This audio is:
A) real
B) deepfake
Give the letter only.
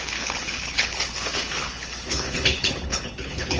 B